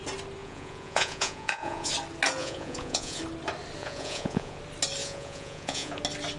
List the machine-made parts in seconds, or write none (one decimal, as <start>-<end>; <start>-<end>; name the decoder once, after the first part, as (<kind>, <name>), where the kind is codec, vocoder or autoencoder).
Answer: 0.4-1.9 (vocoder, Vocos); 2.4-3.2; 3.8-4.6; 5.0-6.0